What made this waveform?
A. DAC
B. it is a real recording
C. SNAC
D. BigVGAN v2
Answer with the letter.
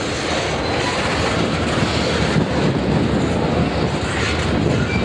B